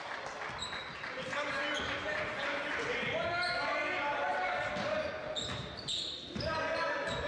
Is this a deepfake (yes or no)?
no